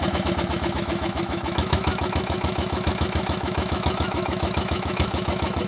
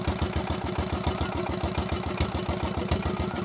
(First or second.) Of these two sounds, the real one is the second